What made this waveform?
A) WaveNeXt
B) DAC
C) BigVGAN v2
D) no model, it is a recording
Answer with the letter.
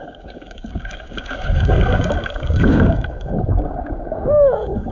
B